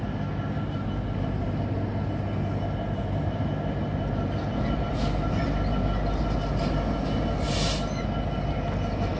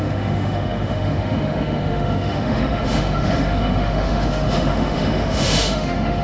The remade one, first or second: second